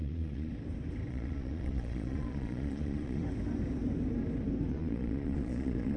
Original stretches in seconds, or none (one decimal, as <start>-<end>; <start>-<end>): 0.5-1.1; 3.2-4.7